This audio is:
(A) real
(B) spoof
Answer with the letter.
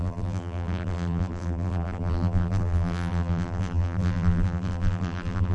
B